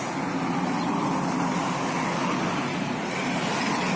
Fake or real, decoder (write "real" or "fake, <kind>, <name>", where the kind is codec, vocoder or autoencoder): real